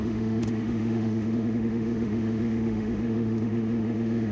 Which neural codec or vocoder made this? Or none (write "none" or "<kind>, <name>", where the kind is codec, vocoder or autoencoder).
autoencoder, DAC-VAE